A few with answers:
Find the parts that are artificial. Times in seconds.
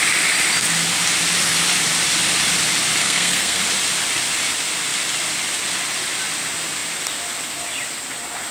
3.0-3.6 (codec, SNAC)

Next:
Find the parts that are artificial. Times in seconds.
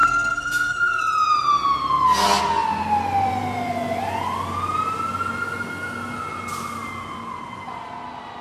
0.0-1.0 (codec, SNAC)